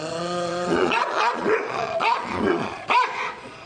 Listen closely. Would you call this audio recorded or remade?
remade